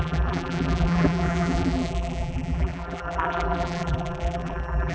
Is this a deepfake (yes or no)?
yes